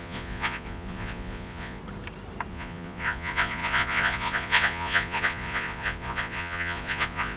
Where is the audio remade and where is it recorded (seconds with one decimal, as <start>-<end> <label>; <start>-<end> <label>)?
0.0-1.8 remade; 1.8-2.5 recorded; 2.5-7.4 remade

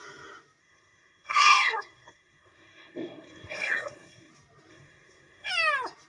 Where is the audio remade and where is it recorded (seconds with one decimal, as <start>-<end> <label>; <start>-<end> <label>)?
0.0-0.6 recorded; 0.6-4.3 remade; 4.3-4.7 recorded; 4.7-5.5 remade; 5.5-6.1 recorded

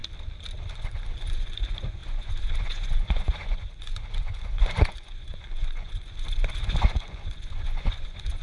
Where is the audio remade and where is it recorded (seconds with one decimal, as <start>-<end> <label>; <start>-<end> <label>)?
0.0-0.7 recorded; 0.7-8.4 remade

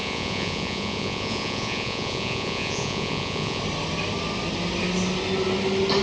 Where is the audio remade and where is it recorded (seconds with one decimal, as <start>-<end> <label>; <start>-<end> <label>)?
0.0-3.6 remade; 3.6-6.0 recorded

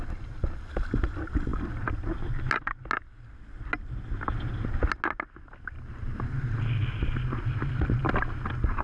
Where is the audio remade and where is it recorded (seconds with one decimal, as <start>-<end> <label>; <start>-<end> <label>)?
0.0-8.8 recorded